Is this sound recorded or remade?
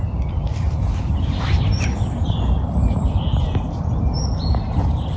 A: recorded